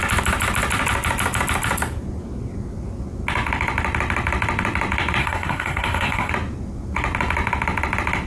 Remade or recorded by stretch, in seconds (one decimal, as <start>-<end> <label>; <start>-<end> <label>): 0.0-5.2 recorded; 5.2-6.3 remade; 6.3-8.3 recorded

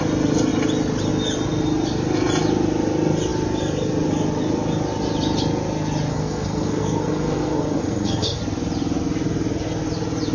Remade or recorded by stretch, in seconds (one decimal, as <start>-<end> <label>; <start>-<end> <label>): 0.0-6.1 recorded; 6.1-8.4 remade; 8.4-10.3 recorded

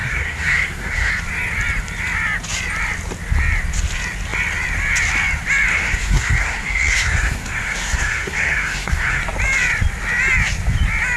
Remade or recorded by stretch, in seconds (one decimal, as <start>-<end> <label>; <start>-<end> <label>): 0.0-1.1 remade; 1.1-5.7 recorded; 5.7-9.2 remade; 9.2-11.2 recorded

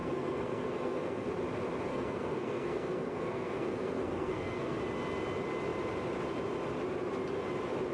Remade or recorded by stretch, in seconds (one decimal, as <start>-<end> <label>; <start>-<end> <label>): 0.0-1.3 remade; 1.3-1.9 recorded; 1.9-4.8 remade; 4.8-7.9 recorded

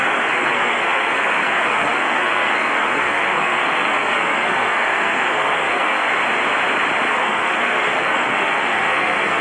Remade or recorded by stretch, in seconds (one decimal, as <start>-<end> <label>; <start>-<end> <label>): 0.0-6.1 remade; 6.1-7.1 recorded; 7.1-9.4 remade

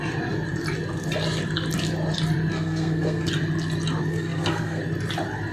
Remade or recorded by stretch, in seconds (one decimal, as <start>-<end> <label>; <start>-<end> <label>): 0.0-2.5 recorded; 2.5-3.3 remade; 3.3-4.1 recorded; 4.1-4.8 remade; 4.8-5.5 recorded

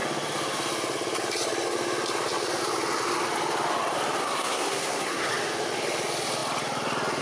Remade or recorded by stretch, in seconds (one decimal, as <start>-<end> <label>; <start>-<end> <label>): 0.0-4.2 recorded; 4.2-5.3 remade; 5.3-7.2 recorded

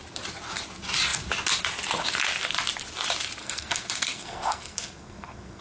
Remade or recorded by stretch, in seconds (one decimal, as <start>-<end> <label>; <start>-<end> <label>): 0.0-3.4 recorded; 3.4-5.6 remade